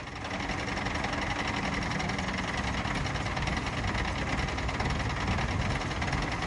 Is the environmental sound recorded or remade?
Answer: recorded